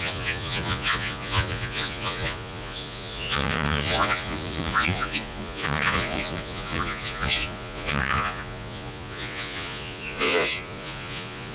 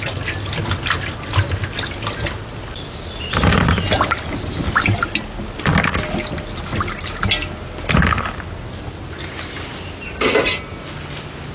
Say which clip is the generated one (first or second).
first